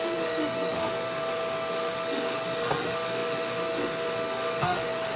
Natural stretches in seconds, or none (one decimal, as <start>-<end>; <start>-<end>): none